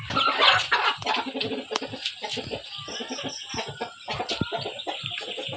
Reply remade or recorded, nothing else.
recorded